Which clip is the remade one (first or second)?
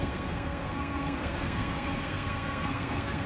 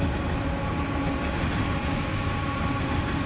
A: first